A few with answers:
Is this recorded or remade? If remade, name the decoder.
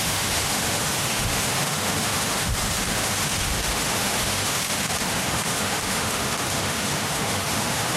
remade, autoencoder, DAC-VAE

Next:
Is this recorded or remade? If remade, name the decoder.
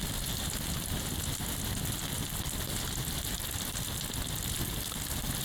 recorded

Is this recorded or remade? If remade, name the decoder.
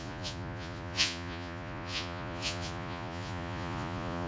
remade, vocoder, Vocos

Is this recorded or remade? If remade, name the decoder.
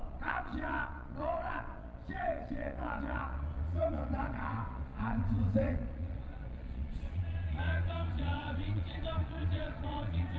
remade, vocoder, Vocos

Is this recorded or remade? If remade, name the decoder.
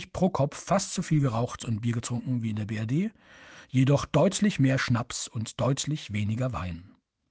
remade, autoencoder, DAC-VAE